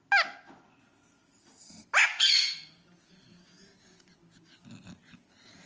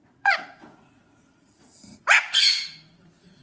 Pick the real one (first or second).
first